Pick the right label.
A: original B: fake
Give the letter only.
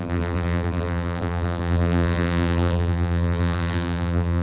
B